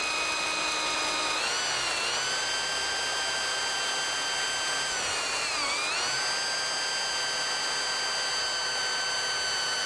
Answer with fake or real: real